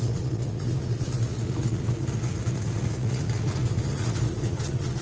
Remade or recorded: remade